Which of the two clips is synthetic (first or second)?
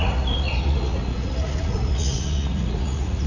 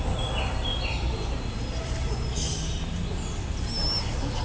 first